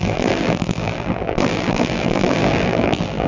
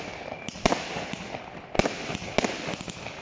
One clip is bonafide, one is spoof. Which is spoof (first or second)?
first